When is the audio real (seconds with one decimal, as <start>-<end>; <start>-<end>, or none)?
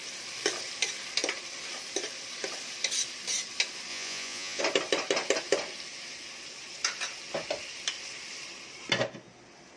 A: 0.0-3.9; 4.6-9.8